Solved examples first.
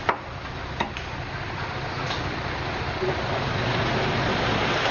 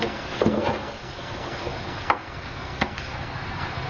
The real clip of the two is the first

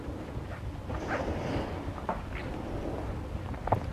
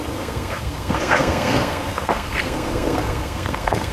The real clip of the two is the first